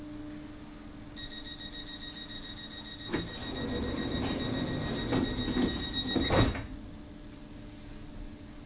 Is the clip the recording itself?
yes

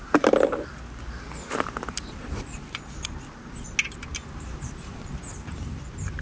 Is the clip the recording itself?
yes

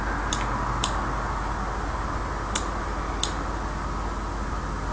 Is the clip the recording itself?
yes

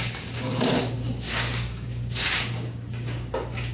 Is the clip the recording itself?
no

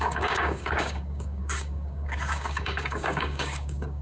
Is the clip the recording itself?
no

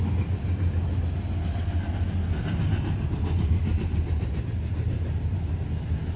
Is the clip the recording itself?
yes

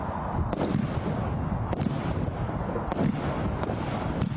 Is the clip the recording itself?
yes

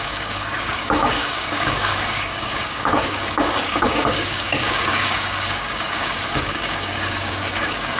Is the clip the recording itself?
no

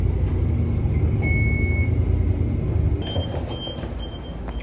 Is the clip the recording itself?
yes